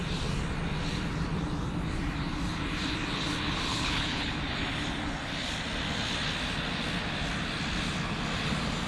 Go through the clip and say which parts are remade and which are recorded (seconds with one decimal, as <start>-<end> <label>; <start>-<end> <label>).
0.0-3.7 recorded; 3.7-4.3 remade; 4.3-8.9 recorded